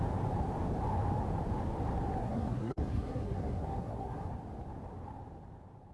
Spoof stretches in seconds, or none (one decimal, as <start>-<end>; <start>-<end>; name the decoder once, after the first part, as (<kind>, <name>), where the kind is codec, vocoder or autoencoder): 2.2-4.3 (codec, SNAC)